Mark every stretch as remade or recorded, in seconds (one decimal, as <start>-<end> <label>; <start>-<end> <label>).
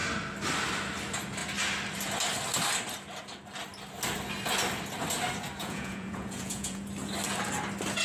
0.0-5.6 recorded; 5.6-6.8 remade; 6.8-8.0 recorded